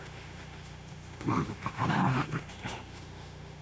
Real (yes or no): no